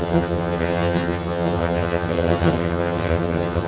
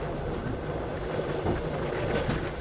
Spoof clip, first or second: first